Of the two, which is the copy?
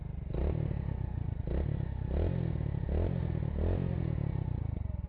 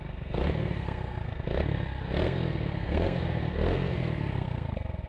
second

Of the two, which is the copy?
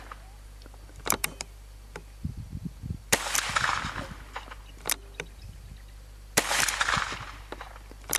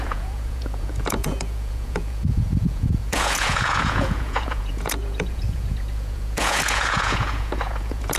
second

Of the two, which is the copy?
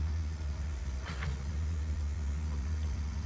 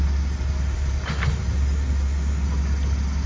first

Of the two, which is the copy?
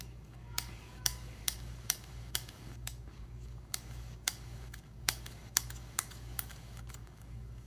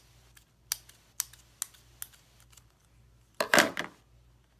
first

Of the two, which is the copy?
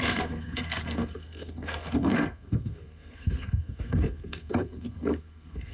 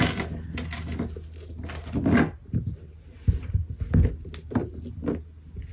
first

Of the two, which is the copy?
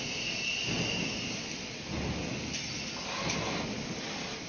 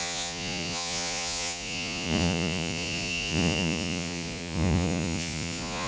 second